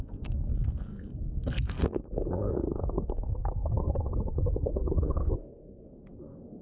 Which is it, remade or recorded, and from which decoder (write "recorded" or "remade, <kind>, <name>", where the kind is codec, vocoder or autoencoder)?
remade, codec, SNAC